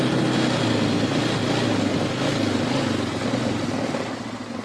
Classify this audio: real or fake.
real